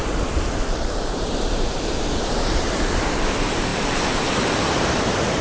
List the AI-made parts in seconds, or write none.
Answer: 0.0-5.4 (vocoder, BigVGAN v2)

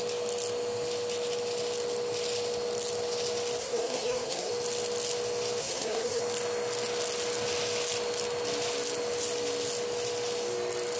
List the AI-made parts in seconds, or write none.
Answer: 3.6-4.5 (codec, SNAC); 5.6-6.2

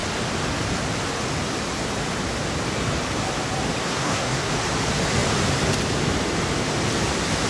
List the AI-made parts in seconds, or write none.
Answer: 3.8-4.5 (codec, SNAC)

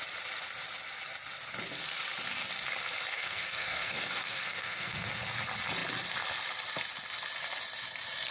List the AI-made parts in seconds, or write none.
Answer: 3.1-5.2 (codec, SNAC)

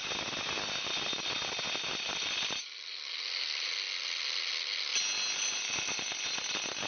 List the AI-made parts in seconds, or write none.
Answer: 1.9-3.7 (vocoder, BigVGAN v2)

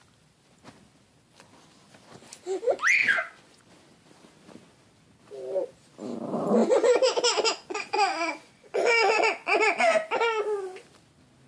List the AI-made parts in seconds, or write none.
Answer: 3.0-3.7 (vocoder, Vocos); 6.6-9.8

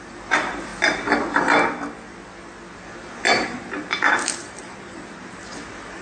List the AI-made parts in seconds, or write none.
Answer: 0.0-0.7 (vocoder, BigVGAN v2); 2.7-6.0

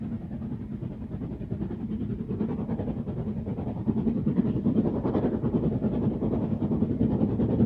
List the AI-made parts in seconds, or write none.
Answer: 0.8-2.8 (vocoder, BigVGAN v2); 3.5-5.1